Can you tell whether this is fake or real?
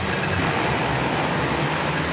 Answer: real